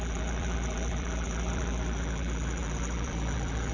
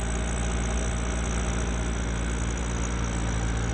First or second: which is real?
second